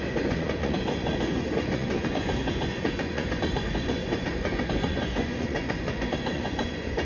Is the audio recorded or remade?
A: remade